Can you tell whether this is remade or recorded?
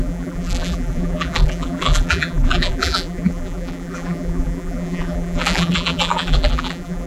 remade